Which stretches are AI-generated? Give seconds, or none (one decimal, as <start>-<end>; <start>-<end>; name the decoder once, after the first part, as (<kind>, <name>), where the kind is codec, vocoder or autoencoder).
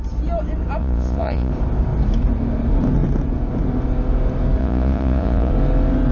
0.8-1.5 (vocoder, Vocos); 4.6-5.5